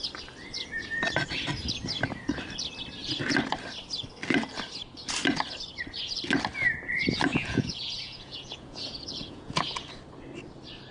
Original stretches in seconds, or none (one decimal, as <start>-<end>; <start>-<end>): 0.0-7.3; 9.9-10.9